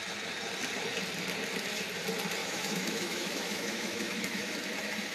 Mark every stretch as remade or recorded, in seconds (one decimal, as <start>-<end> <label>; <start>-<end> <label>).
0.0-2.4 recorded; 2.4-4.5 remade; 4.5-5.1 recorded